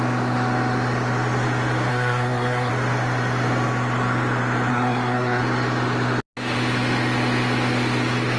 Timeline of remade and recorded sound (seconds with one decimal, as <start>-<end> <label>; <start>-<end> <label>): 0.0-1.9 recorded; 1.9-2.7 remade; 2.7-4.7 recorded; 4.7-5.4 remade; 5.4-8.4 recorded